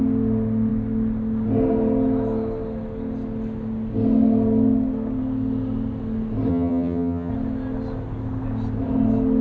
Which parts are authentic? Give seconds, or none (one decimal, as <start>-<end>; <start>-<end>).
0.0-6.5; 7.3-9.4